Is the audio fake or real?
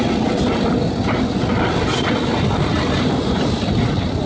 real